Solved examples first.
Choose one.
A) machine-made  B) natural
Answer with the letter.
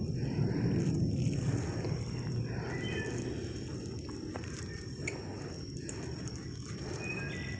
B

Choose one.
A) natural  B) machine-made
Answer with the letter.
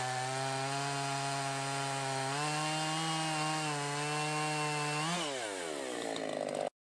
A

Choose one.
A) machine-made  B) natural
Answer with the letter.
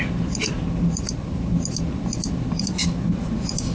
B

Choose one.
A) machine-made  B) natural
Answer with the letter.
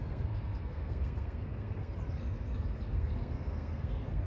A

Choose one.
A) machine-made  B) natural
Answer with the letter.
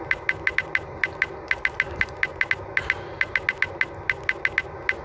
B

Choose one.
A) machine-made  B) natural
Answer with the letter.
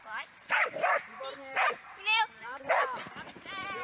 A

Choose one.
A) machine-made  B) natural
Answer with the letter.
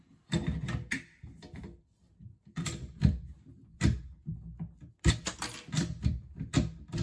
B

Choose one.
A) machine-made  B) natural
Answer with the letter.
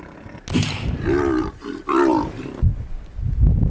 B